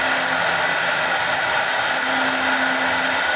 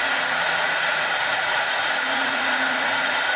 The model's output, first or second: second